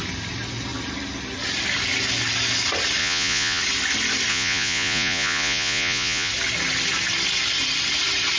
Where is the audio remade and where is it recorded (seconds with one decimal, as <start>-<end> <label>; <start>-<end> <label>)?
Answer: 0.0-3.0 recorded; 3.0-3.6 remade; 3.6-4.3 recorded; 4.3-6.3 remade; 6.3-8.4 recorded